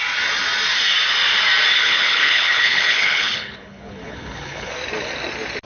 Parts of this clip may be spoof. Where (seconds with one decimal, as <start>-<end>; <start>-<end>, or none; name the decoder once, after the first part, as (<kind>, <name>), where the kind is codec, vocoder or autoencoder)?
1.7-4.7 (codec, HILCodec)